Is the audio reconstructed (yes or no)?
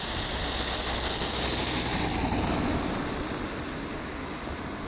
no